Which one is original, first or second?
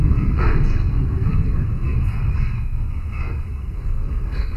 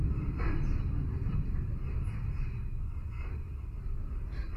second